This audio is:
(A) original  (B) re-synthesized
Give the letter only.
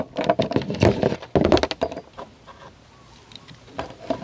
A